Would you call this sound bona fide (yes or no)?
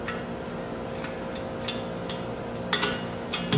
yes